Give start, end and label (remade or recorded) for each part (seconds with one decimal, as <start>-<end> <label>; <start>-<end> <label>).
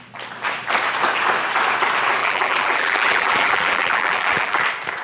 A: 0.0-2.2 recorded; 2.2-4.6 remade; 4.6-5.0 recorded